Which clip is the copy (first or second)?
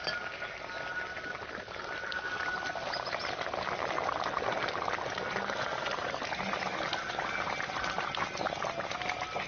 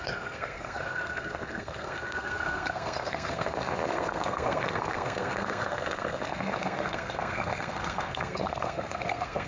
second